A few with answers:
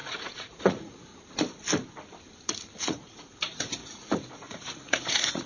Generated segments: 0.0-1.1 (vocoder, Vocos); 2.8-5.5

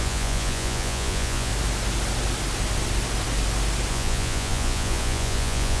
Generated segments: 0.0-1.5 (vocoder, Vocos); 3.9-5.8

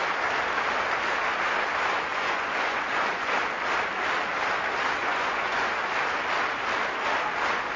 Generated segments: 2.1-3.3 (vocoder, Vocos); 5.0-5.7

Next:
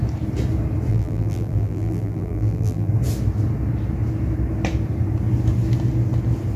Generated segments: 0.9-2.9 (vocoder, BigVGAN v2)

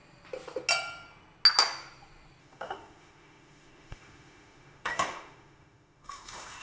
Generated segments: 2.4-6.6 (autoencoder, DAC-VAE)

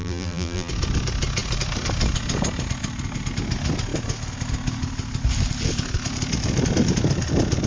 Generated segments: 0.0-0.7 (vocoder, BigVGAN v2)